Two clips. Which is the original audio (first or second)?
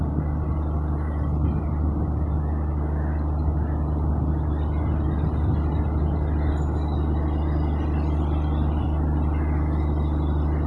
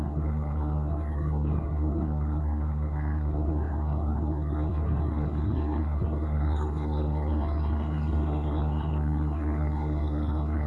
first